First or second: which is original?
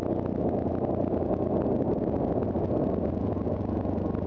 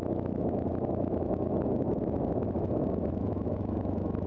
first